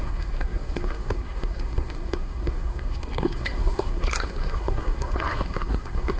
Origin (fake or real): fake